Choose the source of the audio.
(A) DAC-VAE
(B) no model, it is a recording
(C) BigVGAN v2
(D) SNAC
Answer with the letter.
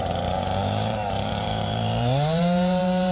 C